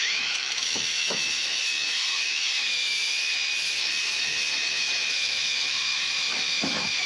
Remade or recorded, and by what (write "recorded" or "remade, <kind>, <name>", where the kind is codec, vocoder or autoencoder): remade, autoencoder, DAC-VAE